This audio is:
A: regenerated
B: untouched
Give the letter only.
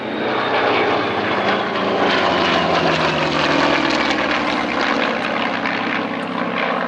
B